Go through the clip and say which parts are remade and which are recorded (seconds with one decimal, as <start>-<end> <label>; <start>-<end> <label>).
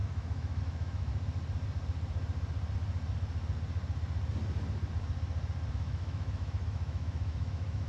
0.0-1.1 remade; 1.1-5.7 recorded; 5.7-7.9 remade